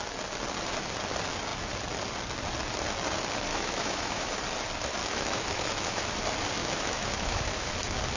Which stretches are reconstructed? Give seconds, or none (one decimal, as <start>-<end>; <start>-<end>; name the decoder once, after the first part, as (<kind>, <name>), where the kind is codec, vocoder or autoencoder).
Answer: 3.5-4.3 (autoencoder, DAC-VAE); 5.0-6.0; 6.6-7.7